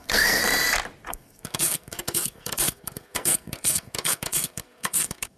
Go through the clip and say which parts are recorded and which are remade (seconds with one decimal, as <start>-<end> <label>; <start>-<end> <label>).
0.0-0.4 remade; 0.4-1.1 recorded; 1.1-5.4 remade